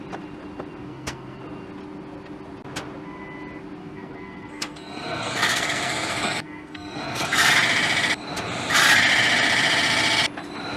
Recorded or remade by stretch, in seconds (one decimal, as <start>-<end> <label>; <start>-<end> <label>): 0.0-0.8 recorded; 0.8-1.4 remade; 1.4-3.8 recorded; 3.8-7.5 remade; 7.5-10.8 recorded